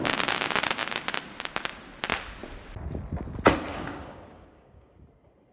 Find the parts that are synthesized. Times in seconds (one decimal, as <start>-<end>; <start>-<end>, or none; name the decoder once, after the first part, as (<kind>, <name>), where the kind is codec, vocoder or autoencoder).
3.7-4.9 (codec, DAC)